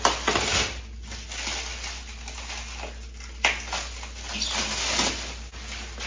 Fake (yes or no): no